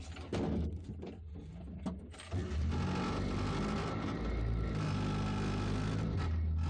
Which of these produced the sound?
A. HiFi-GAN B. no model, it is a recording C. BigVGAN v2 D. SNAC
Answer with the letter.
B